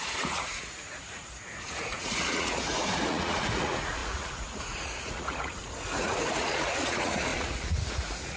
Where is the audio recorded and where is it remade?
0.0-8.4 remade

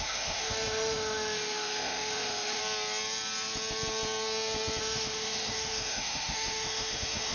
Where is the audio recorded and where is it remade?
0.0-2.6 remade; 2.6-4.8 recorded; 4.8-7.3 remade

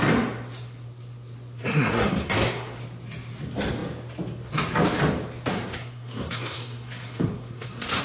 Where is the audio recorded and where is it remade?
0.0-1.6 recorded; 1.6-2.8 remade; 2.8-5.5 recorded; 5.5-8.0 remade

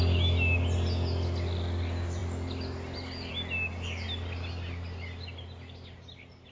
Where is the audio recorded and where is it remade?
0.0-6.5 recorded